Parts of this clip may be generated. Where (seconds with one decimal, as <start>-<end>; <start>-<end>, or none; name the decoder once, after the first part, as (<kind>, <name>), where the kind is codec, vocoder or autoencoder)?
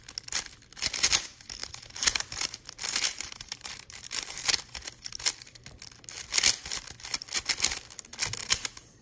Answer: 1.6-4.6 (vocoder, BigVGAN v2); 8.4-9.0